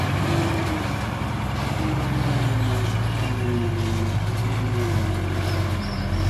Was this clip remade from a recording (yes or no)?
no